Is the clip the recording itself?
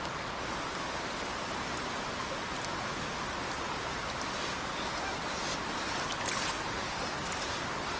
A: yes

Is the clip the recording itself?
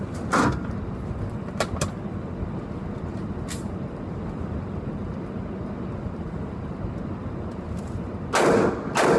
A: yes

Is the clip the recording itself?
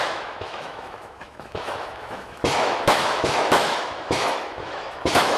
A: no